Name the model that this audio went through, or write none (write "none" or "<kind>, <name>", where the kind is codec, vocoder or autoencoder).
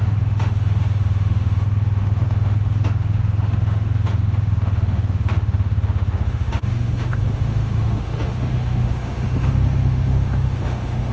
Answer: autoencoder, DAC-VAE